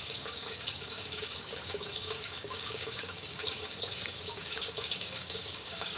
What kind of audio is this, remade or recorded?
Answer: remade